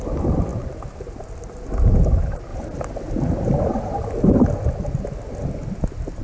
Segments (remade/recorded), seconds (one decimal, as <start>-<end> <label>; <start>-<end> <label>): 0.0-0.5 recorded; 0.5-1.5 remade; 1.5-2.5 recorded; 2.5-4.3 remade; 4.3-6.2 recorded